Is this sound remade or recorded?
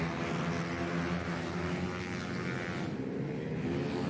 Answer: recorded